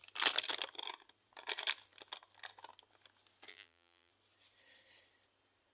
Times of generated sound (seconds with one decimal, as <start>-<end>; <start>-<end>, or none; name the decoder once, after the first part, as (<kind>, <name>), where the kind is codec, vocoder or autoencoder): 3.5-4.1 (vocoder, BigVGAN v2)